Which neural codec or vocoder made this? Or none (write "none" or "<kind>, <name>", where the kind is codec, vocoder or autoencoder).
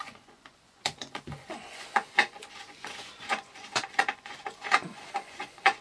vocoder, Vocos